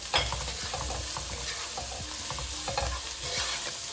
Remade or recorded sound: recorded